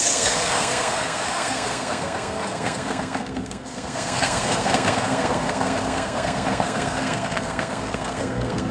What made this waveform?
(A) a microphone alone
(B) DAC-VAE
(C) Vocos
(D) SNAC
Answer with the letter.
D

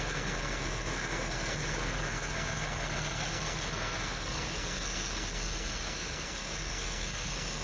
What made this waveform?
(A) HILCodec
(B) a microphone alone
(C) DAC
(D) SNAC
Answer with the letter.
D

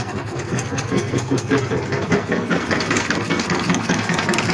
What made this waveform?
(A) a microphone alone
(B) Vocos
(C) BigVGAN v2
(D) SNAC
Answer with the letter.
D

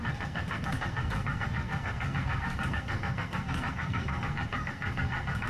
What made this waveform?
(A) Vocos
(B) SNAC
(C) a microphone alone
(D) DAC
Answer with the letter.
B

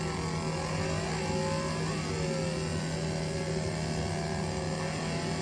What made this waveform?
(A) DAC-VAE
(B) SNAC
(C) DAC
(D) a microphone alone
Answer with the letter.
D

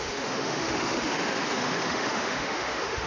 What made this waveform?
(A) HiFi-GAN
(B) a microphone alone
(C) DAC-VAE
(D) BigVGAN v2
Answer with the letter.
C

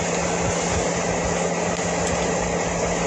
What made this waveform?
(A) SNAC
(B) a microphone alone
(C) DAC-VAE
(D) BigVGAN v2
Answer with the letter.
B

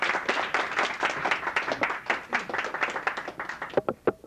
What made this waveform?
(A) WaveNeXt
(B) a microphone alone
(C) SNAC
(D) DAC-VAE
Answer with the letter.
B